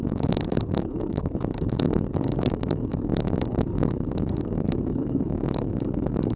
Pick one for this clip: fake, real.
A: fake